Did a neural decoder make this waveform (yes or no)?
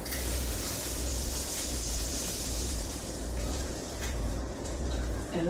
yes